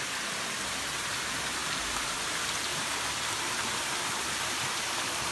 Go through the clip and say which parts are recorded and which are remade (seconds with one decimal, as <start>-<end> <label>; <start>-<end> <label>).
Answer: 0.0-2.7 remade; 2.7-3.4 recorded; 3.4-5.3 remade